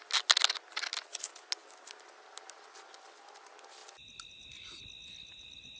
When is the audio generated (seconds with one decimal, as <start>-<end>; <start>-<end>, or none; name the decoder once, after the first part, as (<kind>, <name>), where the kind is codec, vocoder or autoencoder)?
none